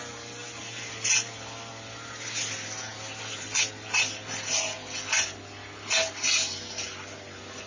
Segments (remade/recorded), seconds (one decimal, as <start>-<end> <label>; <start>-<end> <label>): 0.0-7.7 recorded